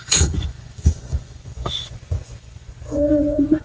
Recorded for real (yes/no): no